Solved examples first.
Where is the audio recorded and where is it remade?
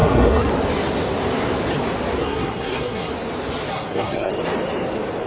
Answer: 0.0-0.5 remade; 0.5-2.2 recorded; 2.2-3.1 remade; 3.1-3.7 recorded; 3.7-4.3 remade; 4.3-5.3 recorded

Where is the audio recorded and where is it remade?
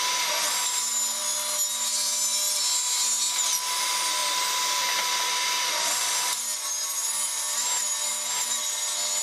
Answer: 0.0-9.2 recorded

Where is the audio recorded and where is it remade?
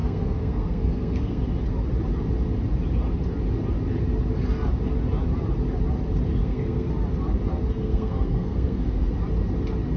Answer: 0.0-1.4 remade; 1.4-6.4 recorded; 6.4-6.9 remade; 6.9-7.7 recorded; 7.7-9.1 remade; 9.1-10.0 recorded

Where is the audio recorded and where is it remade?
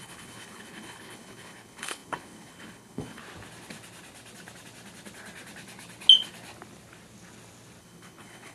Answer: 0.0-3.2 remade; 3.2-7.8 recorded; 7.8-8.5 remade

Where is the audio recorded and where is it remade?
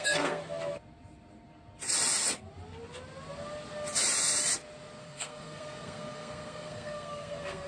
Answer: 0.0-0.4 remade; 0.4-5.0 recorded; 5.0-7.7 remade